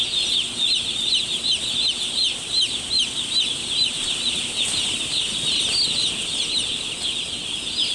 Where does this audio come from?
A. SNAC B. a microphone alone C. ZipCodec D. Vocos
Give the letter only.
B